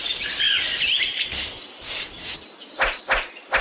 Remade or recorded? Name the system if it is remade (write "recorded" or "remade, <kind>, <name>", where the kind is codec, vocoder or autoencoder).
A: recorded